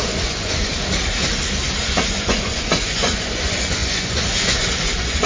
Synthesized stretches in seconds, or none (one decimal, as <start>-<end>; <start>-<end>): 0.0-0.7; 1.8-5.3